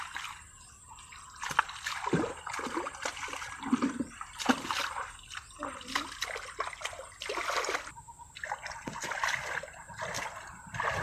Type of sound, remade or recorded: recorded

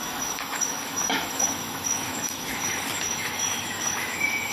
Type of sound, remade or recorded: remade